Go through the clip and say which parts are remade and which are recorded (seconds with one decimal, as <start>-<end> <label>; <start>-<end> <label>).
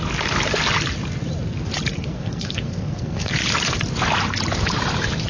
0.0-1.9 recorded; 1.9-3.3 remade; 3.3-5.3 recorded